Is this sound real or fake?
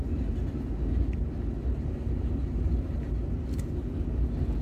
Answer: real